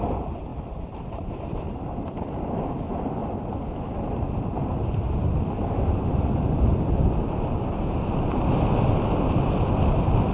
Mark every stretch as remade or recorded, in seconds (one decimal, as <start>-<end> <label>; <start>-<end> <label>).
0.0-3.2 remade; 3.2-7.0 recorded; 7.0-10.3 remade